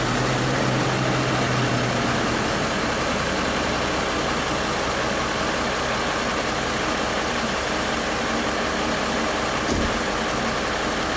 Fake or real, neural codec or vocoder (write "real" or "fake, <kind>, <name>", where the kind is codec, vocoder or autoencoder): real